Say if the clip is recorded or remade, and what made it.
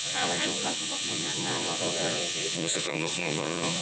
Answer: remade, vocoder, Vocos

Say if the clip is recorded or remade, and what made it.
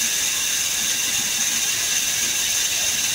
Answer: recorded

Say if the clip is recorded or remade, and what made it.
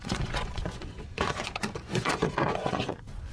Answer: remade, vocoder, Vocos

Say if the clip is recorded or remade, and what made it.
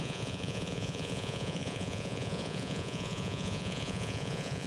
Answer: remade, vocoder, Vocos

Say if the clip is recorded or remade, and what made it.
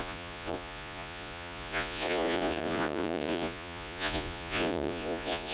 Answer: remade, vocoder, Vocos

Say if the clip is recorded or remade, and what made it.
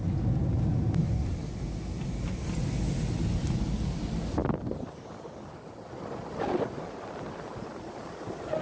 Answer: recorded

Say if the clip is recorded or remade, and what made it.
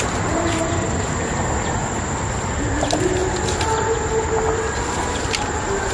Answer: recorded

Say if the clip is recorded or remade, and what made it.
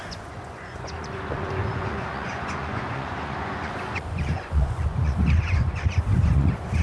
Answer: remade, vocoder, Vocos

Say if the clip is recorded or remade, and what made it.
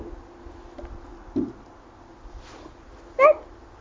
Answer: recorded